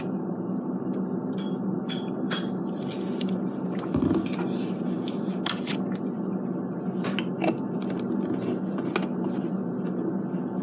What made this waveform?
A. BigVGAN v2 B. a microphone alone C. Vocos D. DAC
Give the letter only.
B